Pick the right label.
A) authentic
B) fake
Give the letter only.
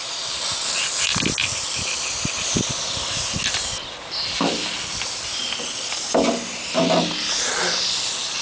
A